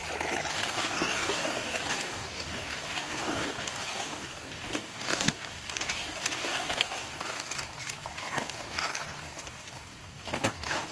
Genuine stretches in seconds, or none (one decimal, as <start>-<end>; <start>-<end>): 0.0-0.5